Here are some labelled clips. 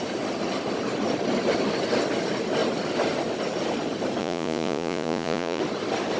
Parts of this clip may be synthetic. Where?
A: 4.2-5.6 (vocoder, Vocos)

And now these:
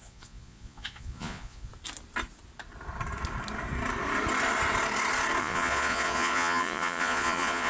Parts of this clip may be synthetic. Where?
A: 0.0-1.7 (vocoder, Vocos); 5.4-7.7

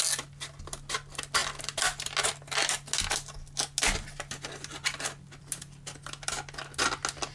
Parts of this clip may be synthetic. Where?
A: none

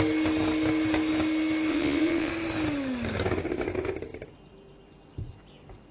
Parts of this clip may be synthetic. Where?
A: 1.7-2.3 (vocoder, Vocos)

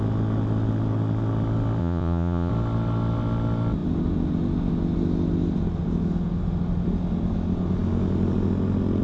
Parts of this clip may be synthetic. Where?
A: 1.8-2.5 (vocoder, Vocos)